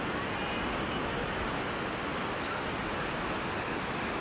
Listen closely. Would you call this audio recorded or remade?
recorded